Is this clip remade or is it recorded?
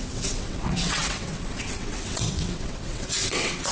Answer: remade